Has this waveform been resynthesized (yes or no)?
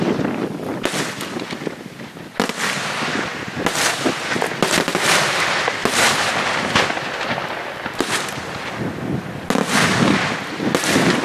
no